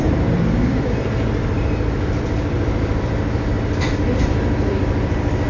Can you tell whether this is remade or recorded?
remade